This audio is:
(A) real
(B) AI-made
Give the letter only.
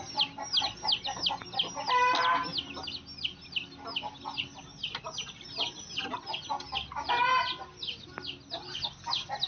A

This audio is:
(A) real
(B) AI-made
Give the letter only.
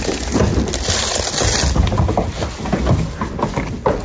A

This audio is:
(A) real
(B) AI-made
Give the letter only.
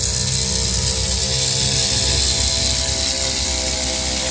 A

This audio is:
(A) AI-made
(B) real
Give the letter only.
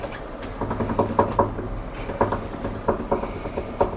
B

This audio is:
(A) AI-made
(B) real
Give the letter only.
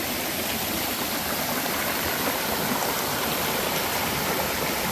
B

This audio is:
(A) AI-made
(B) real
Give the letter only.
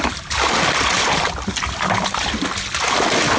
B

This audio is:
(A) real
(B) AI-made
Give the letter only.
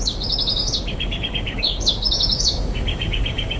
B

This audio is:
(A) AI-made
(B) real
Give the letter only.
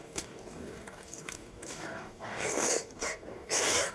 A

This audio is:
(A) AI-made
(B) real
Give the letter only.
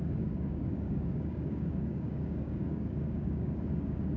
A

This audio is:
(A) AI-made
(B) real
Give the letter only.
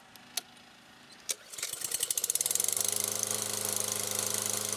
B